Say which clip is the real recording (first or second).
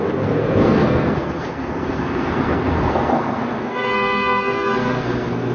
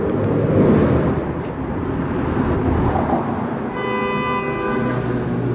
second